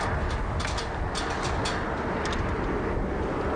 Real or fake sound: real